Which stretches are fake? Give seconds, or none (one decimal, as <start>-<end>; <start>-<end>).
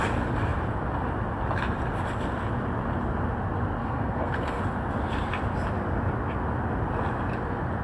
3.8-4.6